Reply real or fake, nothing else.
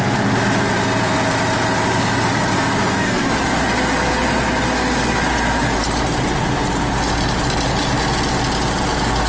real